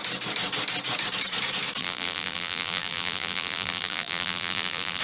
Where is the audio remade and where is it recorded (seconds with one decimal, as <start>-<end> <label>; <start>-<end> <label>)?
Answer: 0.0-1.8 recorded; 1.8-5.0 remade

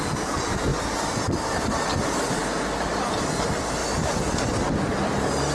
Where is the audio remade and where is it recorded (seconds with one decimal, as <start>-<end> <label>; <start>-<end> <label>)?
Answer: 0.0-5.5 recorded

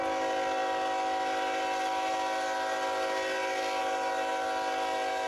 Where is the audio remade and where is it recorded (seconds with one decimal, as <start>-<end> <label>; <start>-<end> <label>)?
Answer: 0.0-5.3 recorded

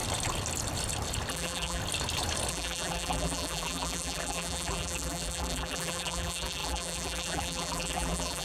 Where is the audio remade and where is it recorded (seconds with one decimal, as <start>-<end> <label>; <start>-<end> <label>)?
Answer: 0.0-1.3 recorded; 1.3-1.8 remade; 1.8-2.5 recorded; 2.5-8.4 remade